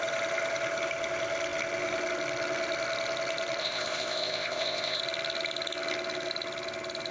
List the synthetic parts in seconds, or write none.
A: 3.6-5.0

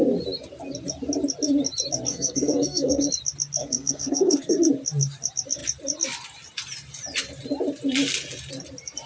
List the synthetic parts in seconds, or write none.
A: 2.1-3.1; 3.6-4.6

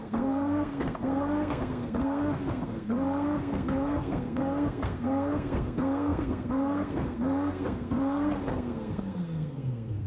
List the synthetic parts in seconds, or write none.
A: 0.0-10.1